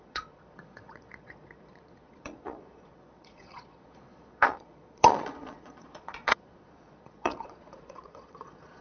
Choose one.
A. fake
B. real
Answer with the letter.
A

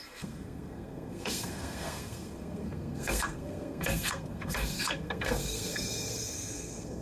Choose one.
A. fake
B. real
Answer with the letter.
A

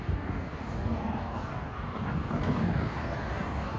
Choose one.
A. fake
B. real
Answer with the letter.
A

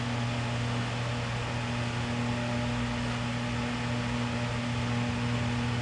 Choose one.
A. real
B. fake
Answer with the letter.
A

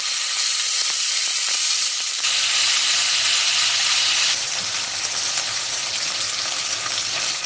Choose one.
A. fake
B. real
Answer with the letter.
B